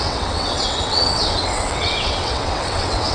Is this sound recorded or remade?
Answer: remade